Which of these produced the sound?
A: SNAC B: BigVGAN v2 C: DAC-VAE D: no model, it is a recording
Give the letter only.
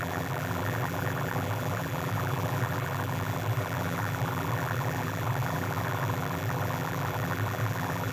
B